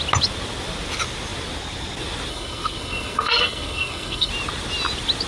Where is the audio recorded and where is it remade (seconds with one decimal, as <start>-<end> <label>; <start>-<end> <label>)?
0.0-2.3 recorded; 2.3-4.3 remade; 4.3-5.3 recorded